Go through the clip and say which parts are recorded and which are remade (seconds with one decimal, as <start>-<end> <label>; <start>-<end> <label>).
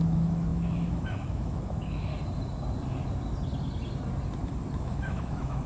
0.0-2.1 remade; 2.1-4.8 recorded; 4.8-5.7 remade